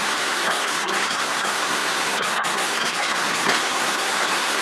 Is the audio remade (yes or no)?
yes